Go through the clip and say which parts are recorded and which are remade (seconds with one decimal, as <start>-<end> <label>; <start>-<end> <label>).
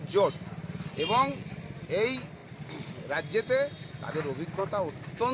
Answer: 0.0-5.3 recorded